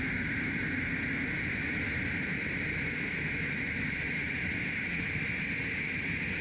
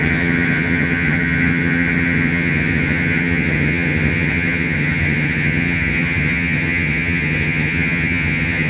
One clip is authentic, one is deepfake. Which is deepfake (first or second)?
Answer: second